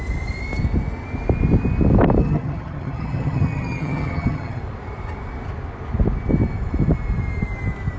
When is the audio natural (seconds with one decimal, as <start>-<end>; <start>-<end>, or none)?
0.0-2.2; 4.6-8.0